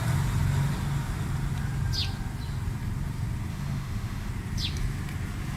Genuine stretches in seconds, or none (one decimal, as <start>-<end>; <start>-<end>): 0.0-3.5; 4.3-5.6